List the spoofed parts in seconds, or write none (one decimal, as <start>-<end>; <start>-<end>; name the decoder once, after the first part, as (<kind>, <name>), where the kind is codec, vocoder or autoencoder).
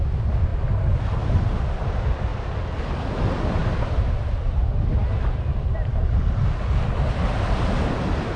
none